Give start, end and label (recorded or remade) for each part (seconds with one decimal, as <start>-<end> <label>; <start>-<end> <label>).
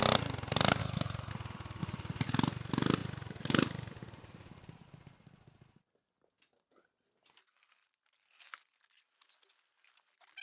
0.0-0.8 recorded; 0.8-1.3 remade; 1.3-10.4 recorded